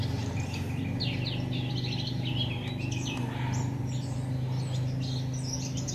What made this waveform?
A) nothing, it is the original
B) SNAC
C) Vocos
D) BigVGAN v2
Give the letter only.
A